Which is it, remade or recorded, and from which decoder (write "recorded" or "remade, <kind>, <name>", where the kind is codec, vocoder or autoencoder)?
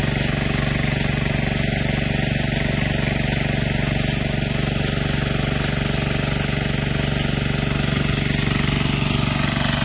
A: recorded